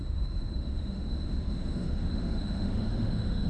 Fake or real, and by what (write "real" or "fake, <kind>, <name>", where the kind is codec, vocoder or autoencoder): fake, autoencoder, DAC-VAE